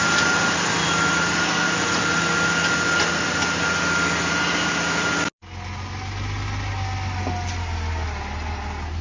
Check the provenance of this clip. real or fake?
real